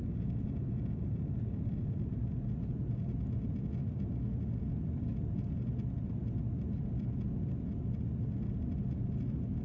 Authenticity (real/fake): real